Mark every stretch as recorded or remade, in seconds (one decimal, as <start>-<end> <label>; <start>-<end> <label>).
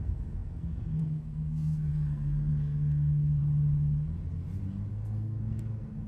0.0-3.4 remade; 3.4-4.9 recorded; 4.9-6.1 remade